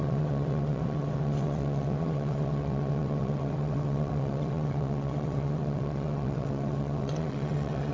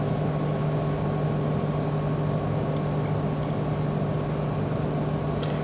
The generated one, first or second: first